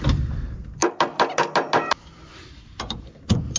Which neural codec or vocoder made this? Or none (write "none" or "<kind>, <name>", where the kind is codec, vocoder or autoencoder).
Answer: none